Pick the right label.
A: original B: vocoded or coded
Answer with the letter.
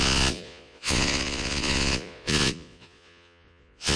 B